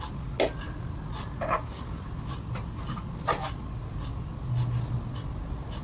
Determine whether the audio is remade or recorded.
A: recorded